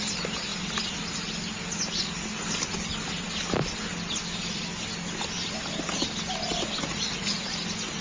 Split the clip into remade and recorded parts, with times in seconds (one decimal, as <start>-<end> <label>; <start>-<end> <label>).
0.0-6.9 recorded; 6.9-7.5 remade; 7.5-8.0 recorded